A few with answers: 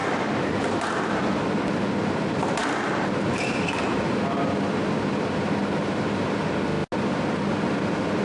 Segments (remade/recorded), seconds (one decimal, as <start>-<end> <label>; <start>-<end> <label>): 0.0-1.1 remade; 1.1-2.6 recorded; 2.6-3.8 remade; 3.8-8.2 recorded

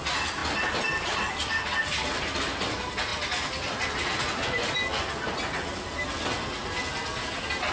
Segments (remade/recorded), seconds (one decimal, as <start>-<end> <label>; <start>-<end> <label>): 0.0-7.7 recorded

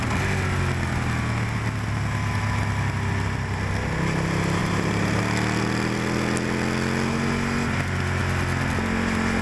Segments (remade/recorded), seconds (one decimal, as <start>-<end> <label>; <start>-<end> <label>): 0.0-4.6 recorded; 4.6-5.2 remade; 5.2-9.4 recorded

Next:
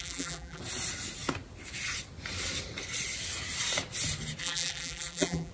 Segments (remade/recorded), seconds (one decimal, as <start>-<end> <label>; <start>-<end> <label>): 0.0-0.6 remade; 0.6-4.4 recorded; 4.4-5.5 remade

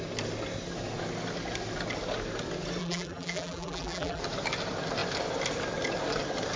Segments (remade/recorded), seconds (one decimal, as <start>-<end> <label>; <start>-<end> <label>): 0.0-2.8 recorded; 2.8-4.2 remade; 4.2-6.6 recorded

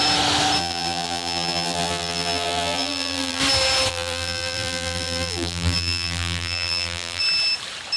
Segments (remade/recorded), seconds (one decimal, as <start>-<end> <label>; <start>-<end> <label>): 0.0-0.6 recorded; 0.6-3.4 remade; 3.4-3.9 recorded; 3.9-7.2 remade; 7.2-8.0 recorded